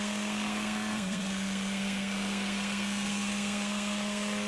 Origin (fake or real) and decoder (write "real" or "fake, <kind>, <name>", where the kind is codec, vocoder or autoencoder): fake, codec, SNAC